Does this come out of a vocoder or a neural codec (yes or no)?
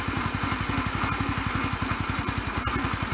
no